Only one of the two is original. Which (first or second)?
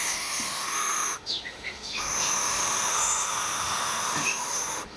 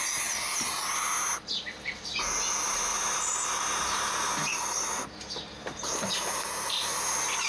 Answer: second